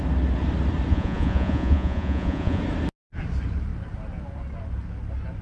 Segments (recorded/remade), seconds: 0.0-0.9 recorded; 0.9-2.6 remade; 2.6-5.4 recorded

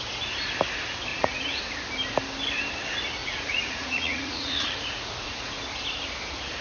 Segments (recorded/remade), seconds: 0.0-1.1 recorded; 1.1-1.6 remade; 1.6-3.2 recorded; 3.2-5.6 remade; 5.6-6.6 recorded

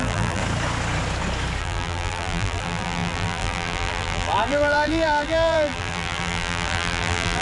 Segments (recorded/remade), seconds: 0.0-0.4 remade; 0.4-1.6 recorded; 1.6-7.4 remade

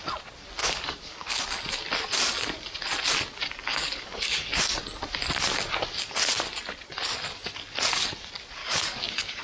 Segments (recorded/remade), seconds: 0.0-0.6 recorded; 0.6-1.4 remade; 1.4-3.7 recorded; 3.7-4.6 remade; 4.6-8.6 recorded; 8.6-9.4 remade

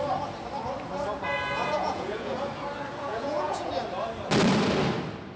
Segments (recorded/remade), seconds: 0.0-1.6 recorded; 1.6-2.3 remade; 2.3-3.1 recorded; 3.1-3.7 remade; 3.7-5.4 recorded

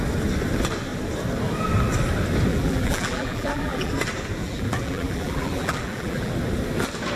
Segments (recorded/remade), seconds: 0.0-2.5 recorded; 2.5-3.9 remade; 3.9-4.4 recorded; 4.4-6.3 remade; 6.3-7.2 recorded